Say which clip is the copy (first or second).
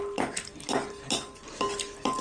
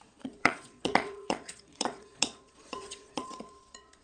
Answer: second